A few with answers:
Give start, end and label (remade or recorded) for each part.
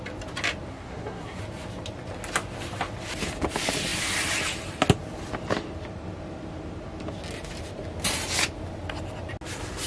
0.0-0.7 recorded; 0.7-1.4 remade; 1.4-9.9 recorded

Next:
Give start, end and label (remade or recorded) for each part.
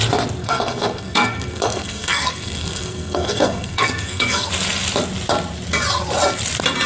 0.0-0.4 recorded; 0.4-4.5 remade; 4.5-6.9 recorded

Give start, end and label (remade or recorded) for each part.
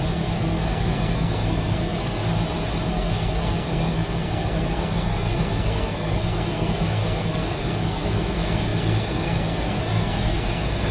0.0-2.2 remade; 2.2-2.9 recorded; 2.9-10.9 remade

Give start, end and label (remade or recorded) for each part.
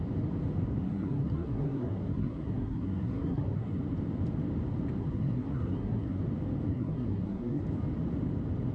0.0-0.7 recorded; 0.7-3.8 remade; 3.8-5.0 recorded; 5.0-6.2 remade; 6.2-6.7 recorded; 6.7-7.6 remade; 7.6-8.7 recorded